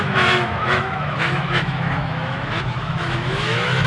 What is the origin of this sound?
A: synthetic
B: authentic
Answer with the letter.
A